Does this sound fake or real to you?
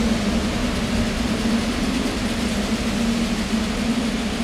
real